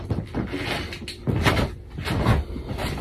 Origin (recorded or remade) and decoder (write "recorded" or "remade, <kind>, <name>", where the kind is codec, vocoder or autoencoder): recorded